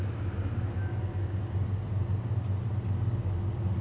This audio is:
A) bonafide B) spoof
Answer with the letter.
A